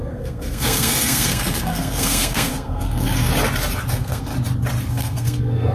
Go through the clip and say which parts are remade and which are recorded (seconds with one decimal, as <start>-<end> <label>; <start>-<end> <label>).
0.0-3.3 remade; 3.3-3.9 recorded; 3.9-4.3 remade; 4.3-4.9 recorded; 4.9-5.7 remade